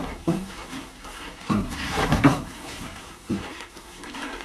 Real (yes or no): no